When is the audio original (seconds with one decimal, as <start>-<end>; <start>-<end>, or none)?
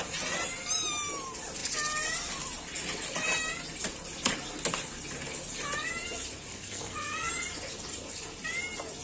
0.0-6.5; 7.3-9.0